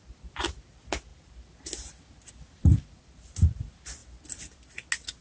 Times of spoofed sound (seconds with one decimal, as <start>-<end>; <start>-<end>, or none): none